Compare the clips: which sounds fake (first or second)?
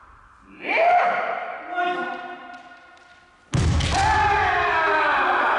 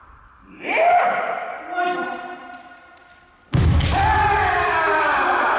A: second